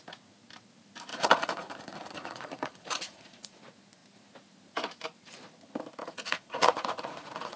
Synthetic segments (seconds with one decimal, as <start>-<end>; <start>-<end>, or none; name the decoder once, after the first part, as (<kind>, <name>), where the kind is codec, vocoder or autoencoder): 1.1-3.6 (vocoder, Vocos); 6.0-7.6